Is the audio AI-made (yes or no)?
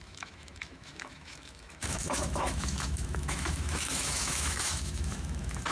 yes